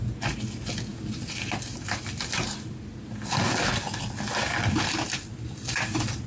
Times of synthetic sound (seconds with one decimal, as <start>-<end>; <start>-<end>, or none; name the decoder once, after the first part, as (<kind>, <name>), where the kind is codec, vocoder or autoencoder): none